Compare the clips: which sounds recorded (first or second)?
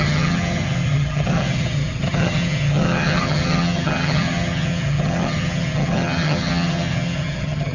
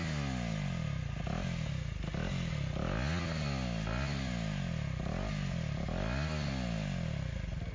second